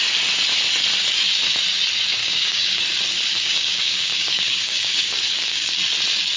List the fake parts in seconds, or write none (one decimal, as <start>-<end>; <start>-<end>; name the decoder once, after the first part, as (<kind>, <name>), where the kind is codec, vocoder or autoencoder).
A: 2.2-2.8 (codec, DAC); 3.3-5.7